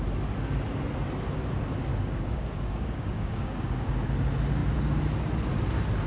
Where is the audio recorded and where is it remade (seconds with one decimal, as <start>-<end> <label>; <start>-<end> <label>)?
0.0-1.9 recorded; 1.9-3.9 remade; 3.9-6.1 recorded